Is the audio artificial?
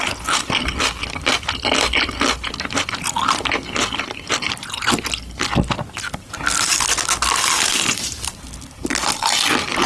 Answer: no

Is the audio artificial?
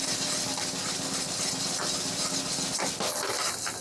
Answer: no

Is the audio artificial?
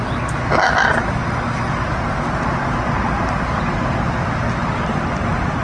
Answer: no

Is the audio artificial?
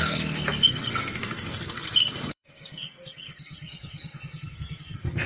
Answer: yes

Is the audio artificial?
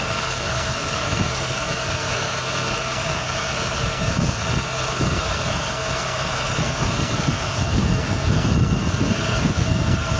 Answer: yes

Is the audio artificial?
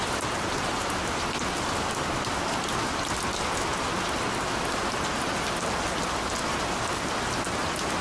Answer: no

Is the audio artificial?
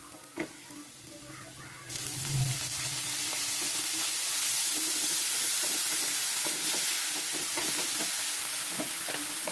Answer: no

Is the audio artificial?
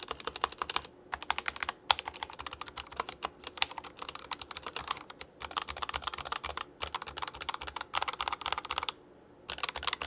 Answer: no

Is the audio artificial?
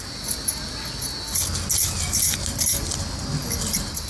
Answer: no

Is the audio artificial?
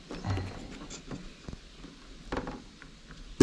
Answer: no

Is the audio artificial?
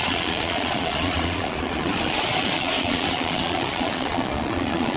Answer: yes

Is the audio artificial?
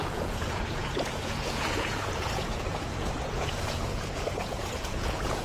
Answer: yes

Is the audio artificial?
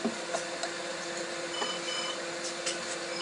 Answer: yes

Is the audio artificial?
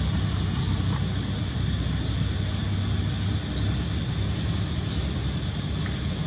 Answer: no